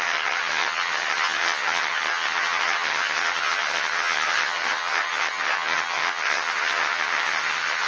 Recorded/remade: remade